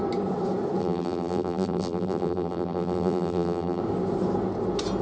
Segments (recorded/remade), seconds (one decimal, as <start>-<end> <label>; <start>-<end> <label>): 0.0-0.8 recorded; 0.8-3.8 remade; 3.8-5.0 recorded